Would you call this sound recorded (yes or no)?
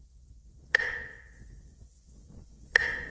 no